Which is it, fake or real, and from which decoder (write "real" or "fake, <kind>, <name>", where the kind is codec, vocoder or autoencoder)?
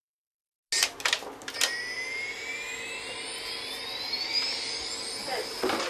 real